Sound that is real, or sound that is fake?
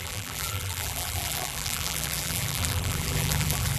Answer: fake